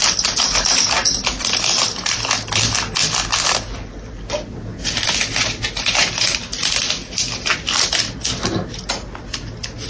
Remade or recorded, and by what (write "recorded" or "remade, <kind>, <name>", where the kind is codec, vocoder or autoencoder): recorded